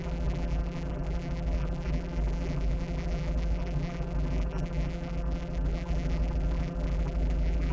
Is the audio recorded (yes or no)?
no